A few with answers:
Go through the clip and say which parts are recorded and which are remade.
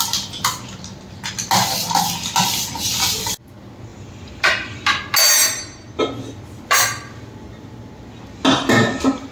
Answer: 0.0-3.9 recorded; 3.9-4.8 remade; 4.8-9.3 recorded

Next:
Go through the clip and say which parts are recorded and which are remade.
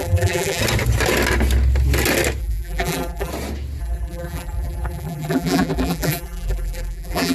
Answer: 0.0-0.6 remade; 0.6-2.4 recorded; 2.4-3.3 remade; 3.3-3.8 recorded; 3.8-7.3 remade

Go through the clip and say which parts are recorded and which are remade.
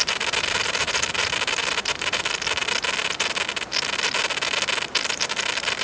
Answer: 0.0-2.6 remade; 2.6-5.0 recorded; 5.0-5.8 remade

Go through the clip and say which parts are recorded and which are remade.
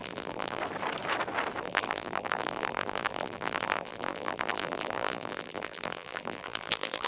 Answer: 0.0-0.6 remade; 0.6-1.6 recorded; 1.6-7.1 remade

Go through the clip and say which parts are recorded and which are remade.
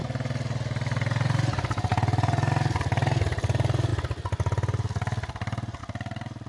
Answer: 0.0-6.5 recorded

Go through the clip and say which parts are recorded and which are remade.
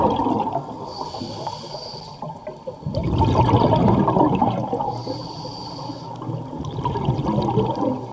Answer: 0.0-3.0 recorded; 3.0-4.0 remade; 4.0-4.4 recorded; 4.4-5.7 remade; 5.7-8.1 recorded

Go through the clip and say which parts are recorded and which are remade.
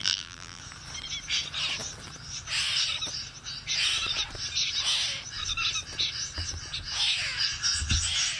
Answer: 0.0-0.6 remade; 0.6-8.4 recorded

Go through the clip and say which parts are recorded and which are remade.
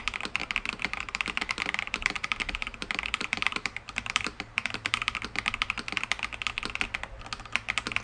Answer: 0.0-0.4 recorded; 0.4-5.2 remade; 5.2-8.0 recorded